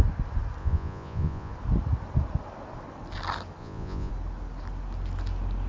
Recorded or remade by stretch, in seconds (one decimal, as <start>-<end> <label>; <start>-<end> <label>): 0.0-0.6 recorded; 0.6-1.5 remade; 1.5-3.6 recorded; 3.6-4.1 remade; 4.1-5.7 recorded